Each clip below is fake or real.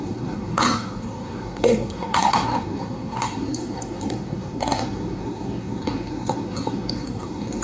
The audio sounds fake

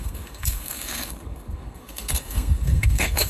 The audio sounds fake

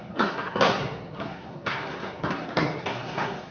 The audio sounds fake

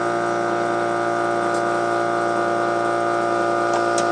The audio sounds real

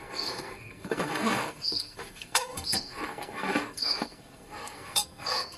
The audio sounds fake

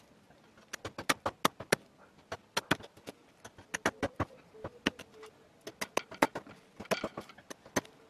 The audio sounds real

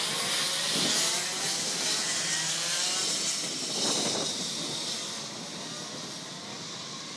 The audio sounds real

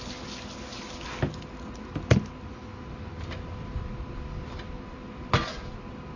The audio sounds real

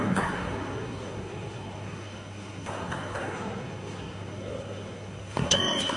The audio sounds fake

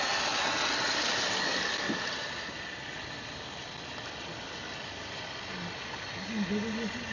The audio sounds real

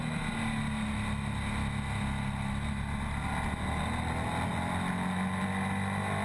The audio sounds real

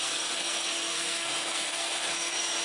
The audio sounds fake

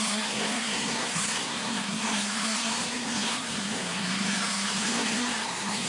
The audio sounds fake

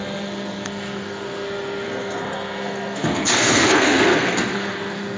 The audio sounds fake